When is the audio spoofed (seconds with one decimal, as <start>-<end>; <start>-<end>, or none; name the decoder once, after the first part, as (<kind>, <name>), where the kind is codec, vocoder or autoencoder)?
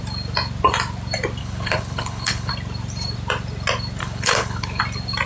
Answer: 1.4-2.5 (codec, HILCodec); 4.0-4.8